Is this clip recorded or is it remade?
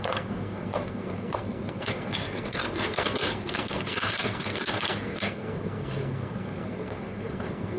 remade